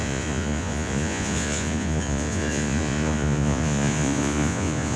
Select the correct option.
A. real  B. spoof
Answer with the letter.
B